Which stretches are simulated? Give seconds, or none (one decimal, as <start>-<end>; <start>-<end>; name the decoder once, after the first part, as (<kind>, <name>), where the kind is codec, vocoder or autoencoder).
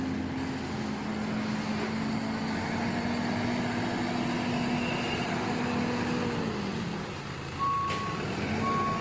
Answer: none